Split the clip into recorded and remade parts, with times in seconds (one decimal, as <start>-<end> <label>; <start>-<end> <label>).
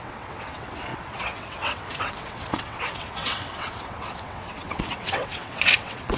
0.0-6.2 remade